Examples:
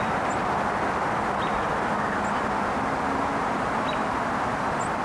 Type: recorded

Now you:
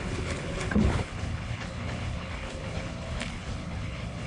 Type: remade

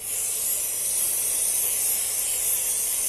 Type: recorded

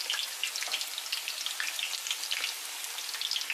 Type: recorded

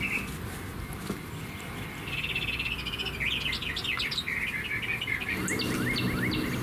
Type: recorded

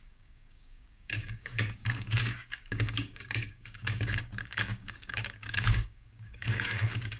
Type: remade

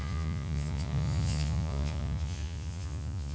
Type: remade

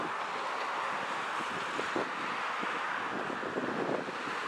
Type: recorded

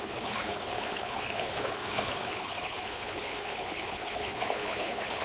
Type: remade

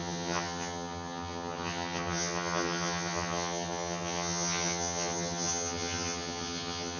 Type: remade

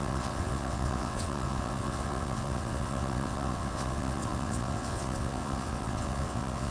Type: remade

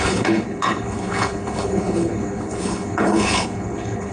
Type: remade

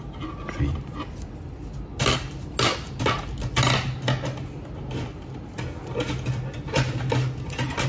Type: recorded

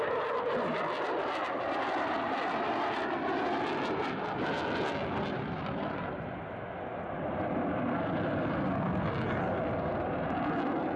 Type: recorded